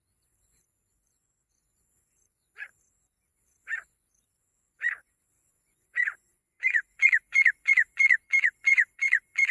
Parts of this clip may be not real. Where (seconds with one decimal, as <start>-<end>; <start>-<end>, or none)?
0.0-9.5